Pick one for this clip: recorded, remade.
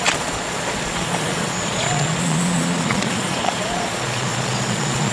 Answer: remade